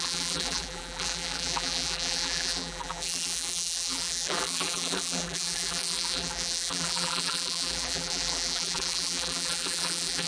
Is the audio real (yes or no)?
no